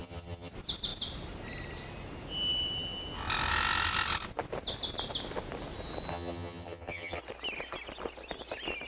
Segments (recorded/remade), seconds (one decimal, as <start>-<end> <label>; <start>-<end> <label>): 0.0-0.5 remade; 0.5-6.1 recorded; 6.1-7.2 remade; 7.2-8.9 recorded

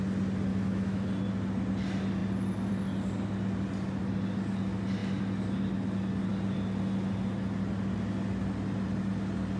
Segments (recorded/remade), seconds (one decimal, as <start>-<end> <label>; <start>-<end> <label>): 0.0-0.5 recorded; 0.5-1.1 remade; 1.1-9.6 recorded

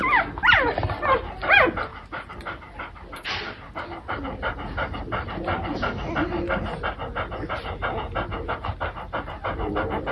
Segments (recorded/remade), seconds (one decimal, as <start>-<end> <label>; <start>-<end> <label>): 0.0-1.9 recorded; 1.9-3.7 remade; 3.7-10.1 recorded

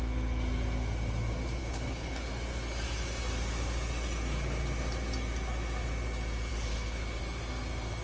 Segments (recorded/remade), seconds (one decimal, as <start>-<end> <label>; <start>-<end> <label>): 0.0-1.6 recorded; 1.6-2.3 remade; 2.3-6.5 recorded; 6.5-7.2 remade; 7.2-8.0 recorded

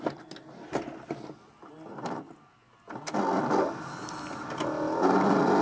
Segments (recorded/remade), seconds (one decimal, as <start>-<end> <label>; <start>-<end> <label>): 0.0-1.9 recorded; 1.9-2.5 remade; 2.5-5.6 recorded

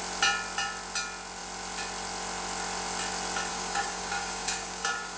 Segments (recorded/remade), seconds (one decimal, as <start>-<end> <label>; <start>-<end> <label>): 0.0-3.5 recorded; 3.5-5.2 remade

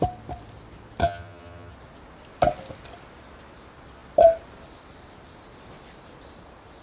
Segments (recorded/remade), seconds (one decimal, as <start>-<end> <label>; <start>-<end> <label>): 0.0-1.0 recorded; 1.0-1.7 remade; 1.7-6.8 recorded